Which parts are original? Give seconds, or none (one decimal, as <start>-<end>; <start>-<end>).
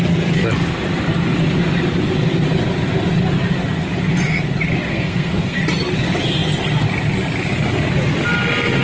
0.0-4.9; 5.6-8.8